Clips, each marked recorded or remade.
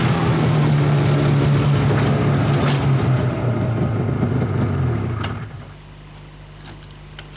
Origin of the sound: recorded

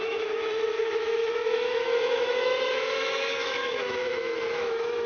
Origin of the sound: remade